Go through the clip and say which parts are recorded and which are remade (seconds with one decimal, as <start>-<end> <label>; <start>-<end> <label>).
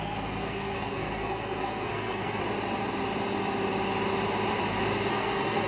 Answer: 0.0-2.4 remade; 2.4-5.1 recorded; 5.1-5.7 remade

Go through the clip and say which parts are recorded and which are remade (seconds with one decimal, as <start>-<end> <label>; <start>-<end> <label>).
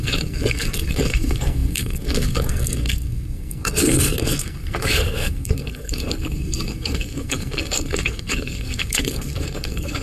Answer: 0.0-10.0 remade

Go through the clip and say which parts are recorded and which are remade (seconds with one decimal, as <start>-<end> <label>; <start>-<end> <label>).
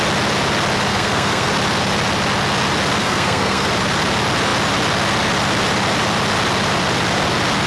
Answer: 0.0-0.9 recorded; 0.9-1.5 remade; 1.5-3.0 recorded; 3.0-3.7 remade; 3.7-7.7 recorded